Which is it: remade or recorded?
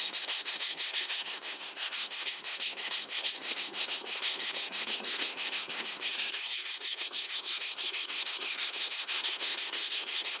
remade